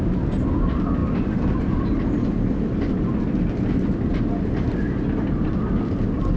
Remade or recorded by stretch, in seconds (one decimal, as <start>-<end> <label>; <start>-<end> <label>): 0.0-6.4 recorded

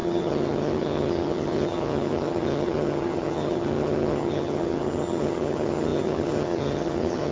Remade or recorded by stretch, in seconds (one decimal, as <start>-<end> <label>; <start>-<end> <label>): 0.0-7.3 remade

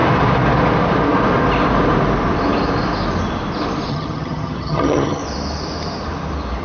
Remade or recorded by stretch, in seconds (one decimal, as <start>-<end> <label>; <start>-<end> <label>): 0.0-3.9 recorded; 3.9-5.2 remade; 5.2-6.6 recorded

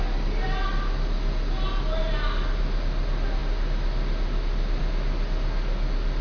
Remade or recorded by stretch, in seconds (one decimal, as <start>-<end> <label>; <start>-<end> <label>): 0.0-6.2 recorded